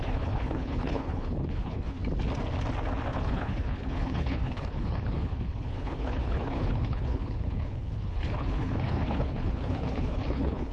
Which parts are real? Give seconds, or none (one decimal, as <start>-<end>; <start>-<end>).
2.0-3.1